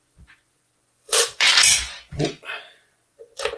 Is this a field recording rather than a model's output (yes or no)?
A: no